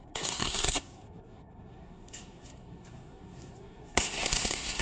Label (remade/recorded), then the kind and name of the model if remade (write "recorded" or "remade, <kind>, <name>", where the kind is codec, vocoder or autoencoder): remade, codec, SNAC